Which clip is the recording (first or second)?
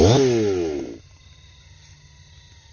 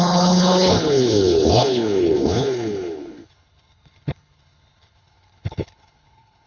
first